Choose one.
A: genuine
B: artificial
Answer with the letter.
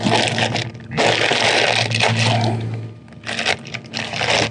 A